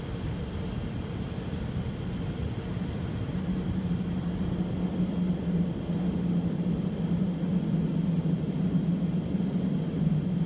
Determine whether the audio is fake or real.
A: real